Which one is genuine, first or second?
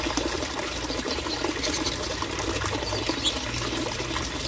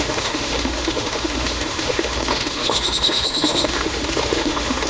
first